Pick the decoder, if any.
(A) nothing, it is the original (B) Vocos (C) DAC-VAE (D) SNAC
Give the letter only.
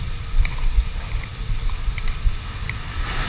A